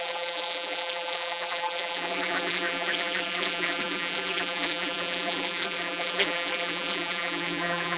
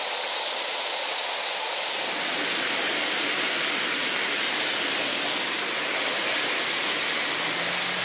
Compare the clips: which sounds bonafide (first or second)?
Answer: second